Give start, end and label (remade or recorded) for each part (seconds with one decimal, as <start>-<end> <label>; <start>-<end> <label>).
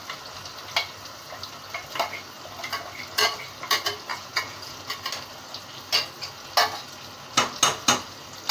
0.0-4.1 recorded; 4.1-4.8 remade; 4.8-8.5 recorded